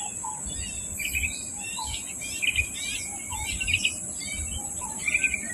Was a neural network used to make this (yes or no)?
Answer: no